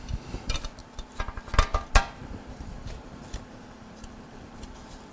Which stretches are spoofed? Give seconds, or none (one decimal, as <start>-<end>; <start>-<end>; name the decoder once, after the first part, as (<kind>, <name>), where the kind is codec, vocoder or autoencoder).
0.8-1.4 (vocoder, BigVGAN v2); 2.2-5.1